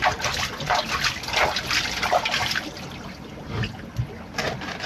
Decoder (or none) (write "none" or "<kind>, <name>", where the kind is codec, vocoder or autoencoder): none